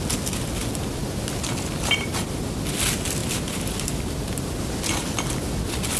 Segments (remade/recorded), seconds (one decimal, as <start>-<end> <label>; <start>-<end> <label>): 0.0-6.0 recorded